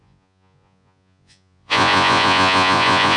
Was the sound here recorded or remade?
remade